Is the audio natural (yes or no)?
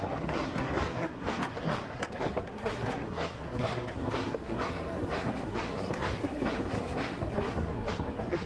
no